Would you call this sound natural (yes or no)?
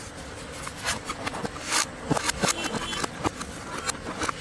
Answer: yes